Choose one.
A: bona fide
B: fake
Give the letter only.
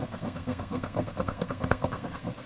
B